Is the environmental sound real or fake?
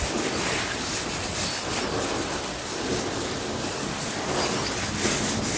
real